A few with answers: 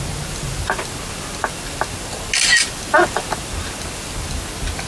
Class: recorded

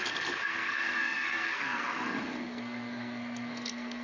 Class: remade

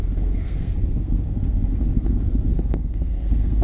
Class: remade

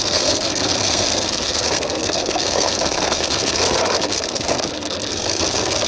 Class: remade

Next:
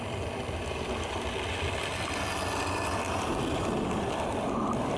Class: recorded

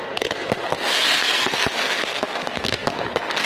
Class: remade